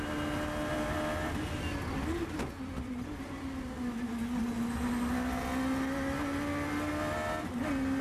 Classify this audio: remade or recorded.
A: recorded